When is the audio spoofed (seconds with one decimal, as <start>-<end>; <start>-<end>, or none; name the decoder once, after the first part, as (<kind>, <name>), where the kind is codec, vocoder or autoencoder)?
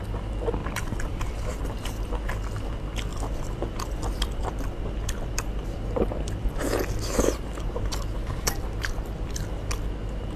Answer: 0.6-1.6 (vocoder, BigVGAN v2); 3.1-6.5; 8.2-9.5